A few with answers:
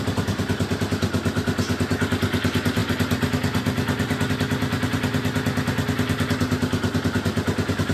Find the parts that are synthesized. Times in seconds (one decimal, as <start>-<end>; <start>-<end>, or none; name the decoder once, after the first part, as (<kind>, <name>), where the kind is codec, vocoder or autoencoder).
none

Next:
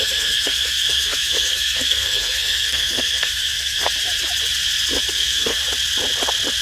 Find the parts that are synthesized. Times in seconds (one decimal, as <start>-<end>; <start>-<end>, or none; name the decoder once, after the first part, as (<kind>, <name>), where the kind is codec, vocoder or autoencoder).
0.0-3.8 (codec, SNAC); 5.0-5.6

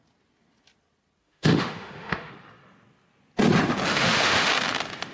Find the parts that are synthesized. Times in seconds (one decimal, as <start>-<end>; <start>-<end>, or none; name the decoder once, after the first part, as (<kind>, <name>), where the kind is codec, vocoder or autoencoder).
1.2-2.3 (autoencoder, DAC-VAE); 3.9-4.5